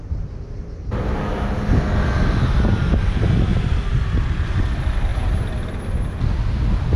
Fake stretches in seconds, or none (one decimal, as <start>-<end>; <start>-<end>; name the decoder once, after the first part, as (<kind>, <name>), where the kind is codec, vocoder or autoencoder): none